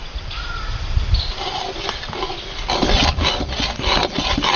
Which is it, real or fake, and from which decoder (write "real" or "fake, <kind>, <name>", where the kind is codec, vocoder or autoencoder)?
real